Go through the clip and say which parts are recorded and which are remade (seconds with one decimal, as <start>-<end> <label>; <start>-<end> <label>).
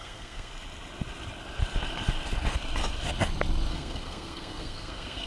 0.0-0.5 remade; 0.5-3.7 recorded; 3.7-5.3 remade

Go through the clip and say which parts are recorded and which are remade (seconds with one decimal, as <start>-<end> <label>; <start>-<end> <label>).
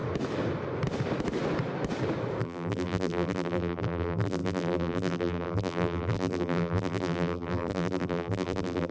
0.0-2.4 recorded; 2.4-8.9 remade